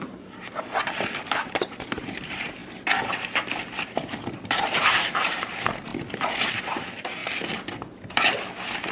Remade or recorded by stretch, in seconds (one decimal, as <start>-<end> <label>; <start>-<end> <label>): 0.0-5.9 remade; 5.9-6.6 recorded; 6.6-7.2 remade; 7.2-8.9 recorded